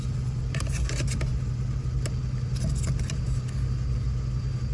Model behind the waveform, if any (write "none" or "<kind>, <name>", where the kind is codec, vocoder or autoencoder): none